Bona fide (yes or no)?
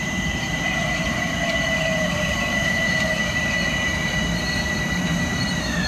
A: no